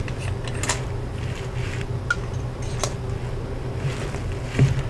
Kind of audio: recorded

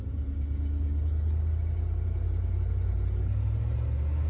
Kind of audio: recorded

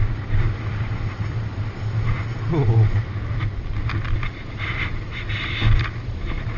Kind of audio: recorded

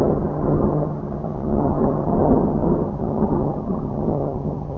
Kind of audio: remade